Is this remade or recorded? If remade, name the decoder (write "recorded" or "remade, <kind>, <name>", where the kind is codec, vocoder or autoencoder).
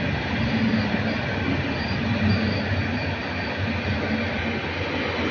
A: recorded